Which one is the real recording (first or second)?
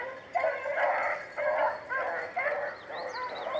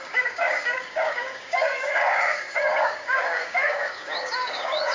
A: first